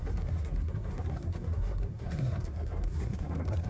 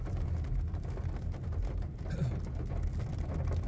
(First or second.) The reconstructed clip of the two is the first